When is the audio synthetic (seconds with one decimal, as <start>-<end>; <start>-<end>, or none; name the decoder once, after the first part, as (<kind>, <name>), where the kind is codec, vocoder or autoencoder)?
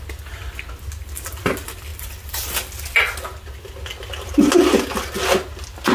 none